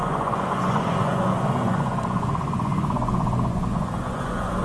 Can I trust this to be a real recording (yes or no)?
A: no